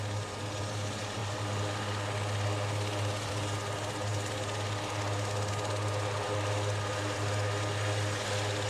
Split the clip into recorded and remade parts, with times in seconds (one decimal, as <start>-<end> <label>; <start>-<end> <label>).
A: 0.0-8.7 recorded